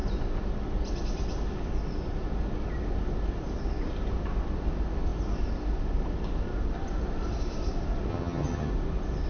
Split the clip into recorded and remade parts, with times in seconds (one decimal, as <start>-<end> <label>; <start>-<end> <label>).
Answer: 0.0-8.1 recorded; 8.1-8.7 remade; 8.7-9.3 recorded